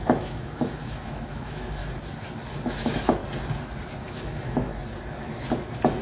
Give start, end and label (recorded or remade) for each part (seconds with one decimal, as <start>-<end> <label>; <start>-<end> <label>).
0.0-1.8 remade; 1.8-2.7 recorded; 2.7-3.2 remade; 3.2-4.0 recorded; 4.0-4.7 remade; 4.7-6.0 recorded